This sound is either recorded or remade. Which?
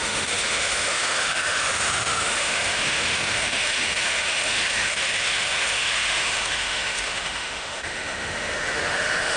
remade